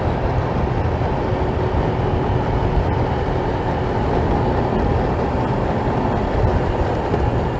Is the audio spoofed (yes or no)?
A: no